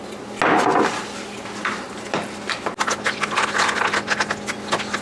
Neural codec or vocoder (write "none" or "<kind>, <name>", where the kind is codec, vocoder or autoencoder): none